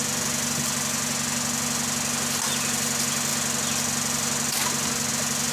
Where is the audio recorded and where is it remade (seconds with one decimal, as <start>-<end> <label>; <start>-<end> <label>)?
0.0-5.5 recorded